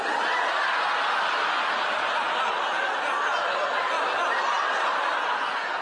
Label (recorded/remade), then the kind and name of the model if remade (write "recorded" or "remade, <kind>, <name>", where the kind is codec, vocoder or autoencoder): recorded